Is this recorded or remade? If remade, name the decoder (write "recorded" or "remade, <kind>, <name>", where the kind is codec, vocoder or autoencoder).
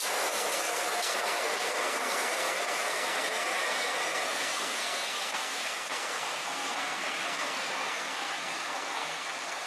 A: remade, codec, SNAC